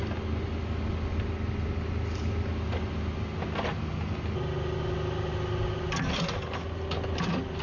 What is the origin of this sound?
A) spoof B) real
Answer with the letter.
B